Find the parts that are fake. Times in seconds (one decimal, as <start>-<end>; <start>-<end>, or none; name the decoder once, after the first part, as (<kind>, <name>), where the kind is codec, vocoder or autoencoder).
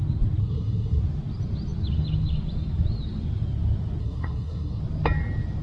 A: 0.4-1.0 (codec, SNAC); 4.0-4.8